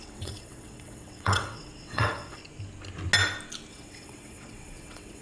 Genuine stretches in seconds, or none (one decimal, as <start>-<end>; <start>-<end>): 2.4-3.7